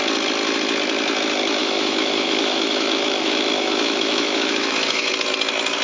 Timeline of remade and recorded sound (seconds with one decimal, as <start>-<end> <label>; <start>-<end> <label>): 0.0-1.6 recorded; 1.6-5.1 remade; 5.1-5.8 recorded